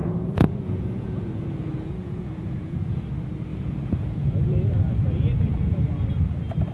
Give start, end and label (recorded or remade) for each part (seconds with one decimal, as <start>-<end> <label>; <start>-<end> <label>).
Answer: 0.0-3.0 remade; 3.0-3.5 recorded; 3.5-4.7 remade; 4.7-6.7 recorded